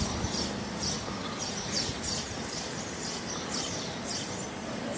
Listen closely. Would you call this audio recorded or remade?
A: recorded